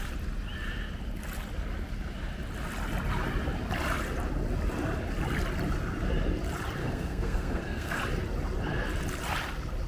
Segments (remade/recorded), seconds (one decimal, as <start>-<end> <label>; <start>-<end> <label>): 0.0-6.8 recorded; 6.8-8.0 remade; 8.0-9.9 recorded